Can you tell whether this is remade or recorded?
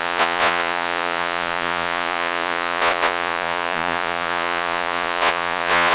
remade